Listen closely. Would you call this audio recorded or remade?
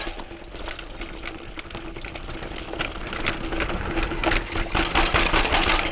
recorded